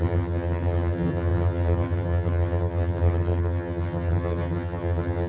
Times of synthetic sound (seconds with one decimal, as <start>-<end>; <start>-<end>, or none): 0.0-5.3